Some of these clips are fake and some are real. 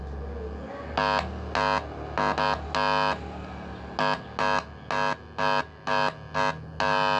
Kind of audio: real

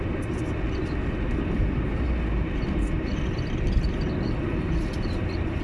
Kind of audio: real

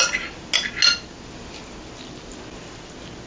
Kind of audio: real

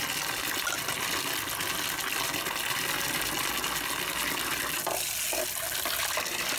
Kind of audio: real